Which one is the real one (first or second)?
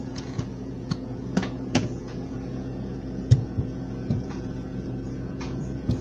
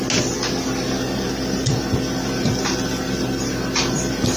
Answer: second